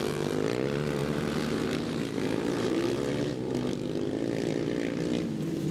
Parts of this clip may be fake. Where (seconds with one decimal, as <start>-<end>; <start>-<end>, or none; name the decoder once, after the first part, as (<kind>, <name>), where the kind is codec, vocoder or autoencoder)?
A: 1.0-2.8 (vocoder, BigVGAN v2)